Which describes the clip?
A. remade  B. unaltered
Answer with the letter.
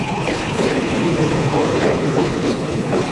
A